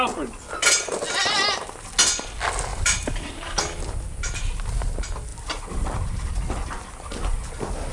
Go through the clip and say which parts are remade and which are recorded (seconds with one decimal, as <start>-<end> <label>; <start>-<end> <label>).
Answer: 0.0-2.7 recorded; 2.7-3.6 remade; 3.6-7.9 recorded